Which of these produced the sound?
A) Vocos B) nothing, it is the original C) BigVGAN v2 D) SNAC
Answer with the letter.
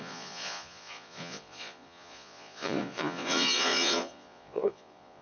A